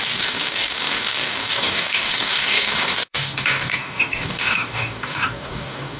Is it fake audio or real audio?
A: fake